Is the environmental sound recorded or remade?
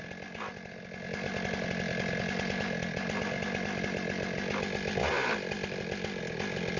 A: recorded